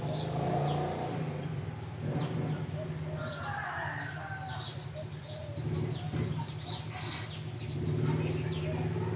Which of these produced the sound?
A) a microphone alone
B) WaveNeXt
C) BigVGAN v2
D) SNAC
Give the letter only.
A